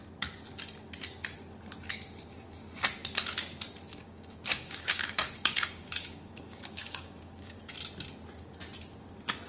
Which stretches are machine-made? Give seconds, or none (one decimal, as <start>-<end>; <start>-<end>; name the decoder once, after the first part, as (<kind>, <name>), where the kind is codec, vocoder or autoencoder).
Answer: 3.9-7.6 (codec, DAC)